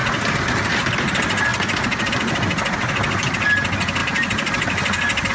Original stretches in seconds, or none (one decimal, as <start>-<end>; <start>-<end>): 0.0-5.3